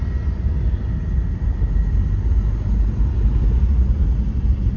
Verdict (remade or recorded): recorded